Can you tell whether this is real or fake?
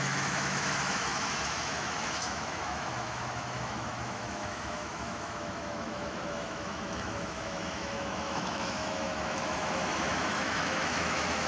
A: fake